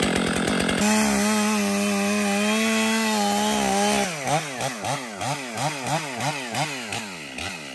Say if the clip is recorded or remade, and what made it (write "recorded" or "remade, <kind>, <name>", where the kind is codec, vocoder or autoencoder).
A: recorded